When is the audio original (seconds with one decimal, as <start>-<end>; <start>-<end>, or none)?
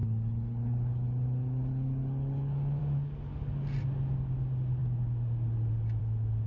2.8-6.5